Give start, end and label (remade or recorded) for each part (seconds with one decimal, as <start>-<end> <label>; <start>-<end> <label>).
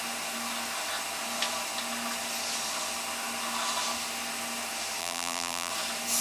0.0-5.0 recorded; 5.0-5.7 remade; 5.7-6.2 recorded